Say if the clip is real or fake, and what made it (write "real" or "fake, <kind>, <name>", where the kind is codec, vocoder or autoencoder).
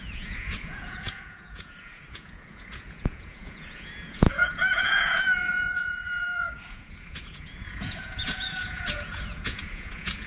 fake, vocoder, Vocos